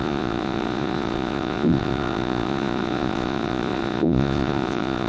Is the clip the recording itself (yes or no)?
no